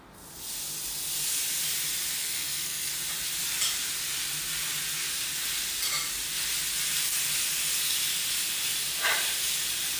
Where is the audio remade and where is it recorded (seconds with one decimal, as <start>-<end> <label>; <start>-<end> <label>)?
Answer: 0.0-2.2 recorded; 2.2-2.9 remade; 2.9-10.0 recorded

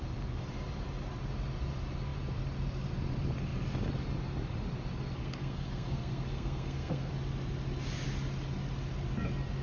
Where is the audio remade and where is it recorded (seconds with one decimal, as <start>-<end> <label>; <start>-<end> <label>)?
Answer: 0.0-5.2 recorded; 5.2-7.1 remade; 7.1-9.6 recorded

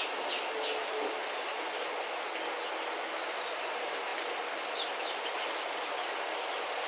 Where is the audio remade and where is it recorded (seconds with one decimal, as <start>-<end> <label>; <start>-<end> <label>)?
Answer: 0.0-6.9 recorded